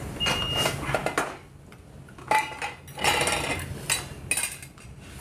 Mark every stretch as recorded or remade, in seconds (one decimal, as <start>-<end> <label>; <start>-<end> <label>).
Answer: 0.0-5.2 recorded